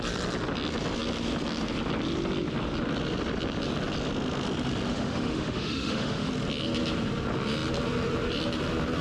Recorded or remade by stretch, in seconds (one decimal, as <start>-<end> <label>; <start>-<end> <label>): 0.0-4.9 recorded; 4.9-6.3 remade; 6.3-9.0 recorded